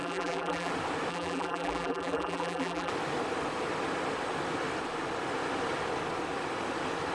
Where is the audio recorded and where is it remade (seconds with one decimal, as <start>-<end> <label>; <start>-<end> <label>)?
0.0-0.7 remade; 0.7-1.1 recorded; 1.1-2.9 remade; 2.9-7.1 recorded